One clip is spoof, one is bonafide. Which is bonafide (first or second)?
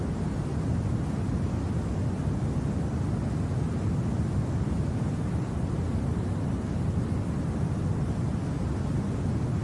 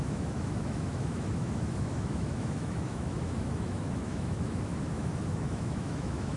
first